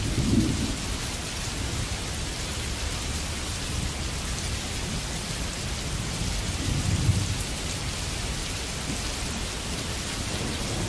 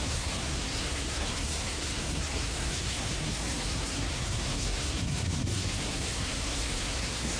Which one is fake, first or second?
second